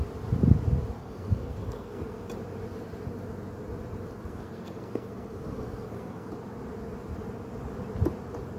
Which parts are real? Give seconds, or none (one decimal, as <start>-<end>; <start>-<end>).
0.0-1.0; 2.3-4.2; 6.3-8.6